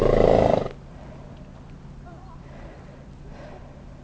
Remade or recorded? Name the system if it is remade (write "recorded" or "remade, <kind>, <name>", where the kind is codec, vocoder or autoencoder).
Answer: recorded